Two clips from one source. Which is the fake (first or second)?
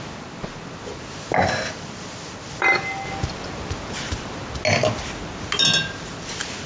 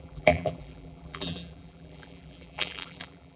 second